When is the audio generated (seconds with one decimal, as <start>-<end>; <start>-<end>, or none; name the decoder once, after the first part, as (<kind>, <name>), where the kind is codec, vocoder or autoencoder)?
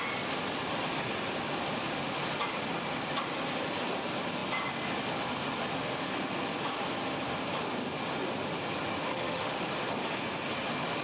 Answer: 9.1-9.7 (autoencoder, DAC-VAE)